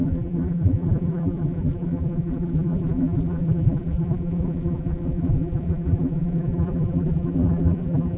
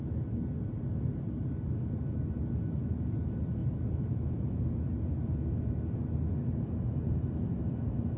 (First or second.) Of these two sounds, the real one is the second